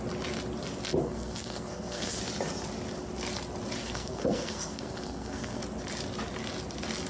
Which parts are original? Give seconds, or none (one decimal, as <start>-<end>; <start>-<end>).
0.0-1.0; 2.2-3.8; 5.6-7.1

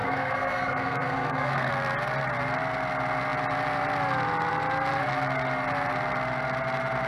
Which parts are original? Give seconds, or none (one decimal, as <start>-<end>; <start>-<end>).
1.7-7.1